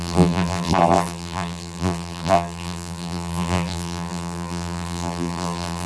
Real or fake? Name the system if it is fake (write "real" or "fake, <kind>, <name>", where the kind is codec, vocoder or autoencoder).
fake, vocoder, BigVGAN v2